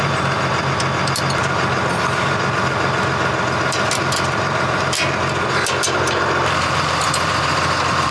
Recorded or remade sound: remade